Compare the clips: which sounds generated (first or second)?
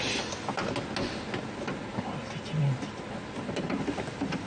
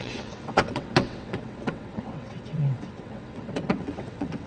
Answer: second